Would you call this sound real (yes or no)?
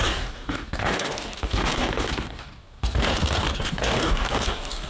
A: no